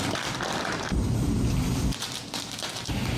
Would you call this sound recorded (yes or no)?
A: no